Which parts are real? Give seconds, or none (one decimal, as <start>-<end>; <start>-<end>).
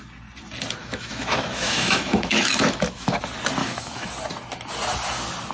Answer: 0.0-0.8; 3.2-3.6; 4.1-5.5